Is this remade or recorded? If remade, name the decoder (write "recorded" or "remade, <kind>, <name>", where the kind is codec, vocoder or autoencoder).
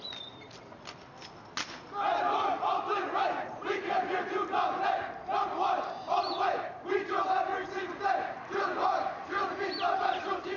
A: recorded